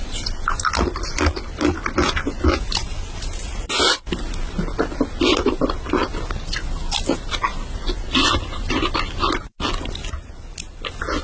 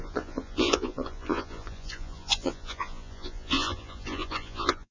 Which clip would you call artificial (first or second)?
second